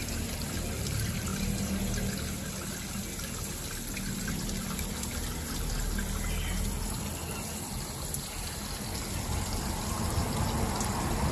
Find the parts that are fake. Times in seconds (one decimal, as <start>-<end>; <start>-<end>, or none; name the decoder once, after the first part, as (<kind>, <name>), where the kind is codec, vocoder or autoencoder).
none